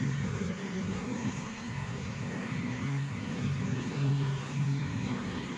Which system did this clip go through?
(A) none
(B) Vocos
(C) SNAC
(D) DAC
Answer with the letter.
C